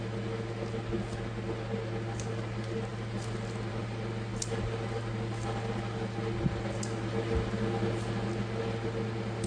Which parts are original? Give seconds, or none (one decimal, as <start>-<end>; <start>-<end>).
0.0-9.5